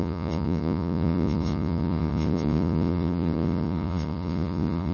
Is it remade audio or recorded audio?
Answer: remade